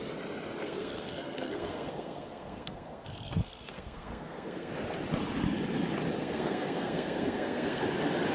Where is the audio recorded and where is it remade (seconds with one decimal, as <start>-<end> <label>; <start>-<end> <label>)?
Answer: 0.0-0.6 recorded; 0.6-4.7 remade; 4.7-6.2 recorded; 6.2-7.8 remade; 7.8-8.3 recorded

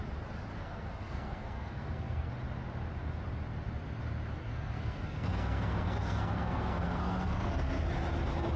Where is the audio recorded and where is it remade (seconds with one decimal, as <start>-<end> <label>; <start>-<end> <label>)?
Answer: 0.0-0.6 recorded; 0.6-2.3 remade; 2.3-4.4 recorded; 4.4-7.8 remade; 7.8-8.6 recorded

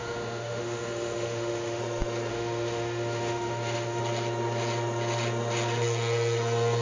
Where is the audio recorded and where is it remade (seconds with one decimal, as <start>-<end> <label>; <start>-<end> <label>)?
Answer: 0.0-1.8 remade; 1.8-2.3 recorded; 2.3-4.0 remade; 4.0-6.8 recorded

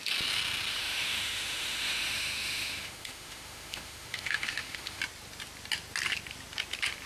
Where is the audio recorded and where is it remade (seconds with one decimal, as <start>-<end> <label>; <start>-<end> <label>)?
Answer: 0.0-0.7 recorded; 0.7-5.0 remade; 5.0-7.1 recorded

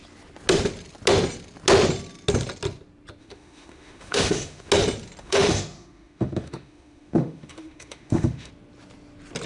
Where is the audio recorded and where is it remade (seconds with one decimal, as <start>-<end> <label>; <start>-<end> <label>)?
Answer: 0.0-3.2 recorded; 3.2-4.7 remade; 4.7-5.2 recorded; 5.2-8.5 remade; 8.5-9.5 recorded

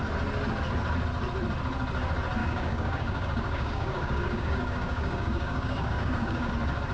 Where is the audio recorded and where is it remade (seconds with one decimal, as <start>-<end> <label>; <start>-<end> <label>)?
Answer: 0.0-2.4 recorded; 2.4-6.5 remade; 6.5-6.9 recorded

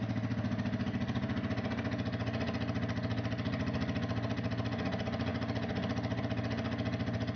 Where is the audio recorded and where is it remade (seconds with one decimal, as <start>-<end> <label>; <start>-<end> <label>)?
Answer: 0.0-7.4 recorded